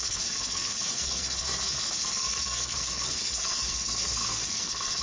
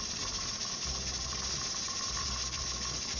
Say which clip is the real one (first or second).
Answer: second